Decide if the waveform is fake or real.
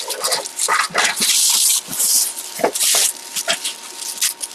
real